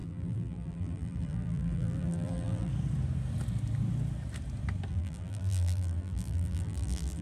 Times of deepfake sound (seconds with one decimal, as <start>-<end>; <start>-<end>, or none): 0.0-2.7; 4.9-7.2